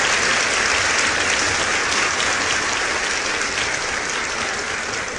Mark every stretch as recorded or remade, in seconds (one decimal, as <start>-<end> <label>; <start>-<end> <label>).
0.0-5.2 recorded